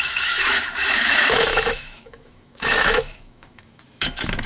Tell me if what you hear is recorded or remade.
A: remade